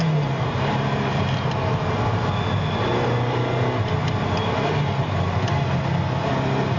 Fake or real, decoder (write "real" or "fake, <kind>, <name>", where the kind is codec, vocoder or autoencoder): real